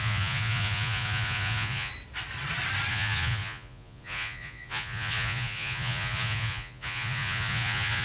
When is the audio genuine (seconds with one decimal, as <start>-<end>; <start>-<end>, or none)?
1.9-2.9